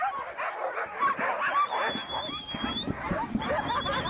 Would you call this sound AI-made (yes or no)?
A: no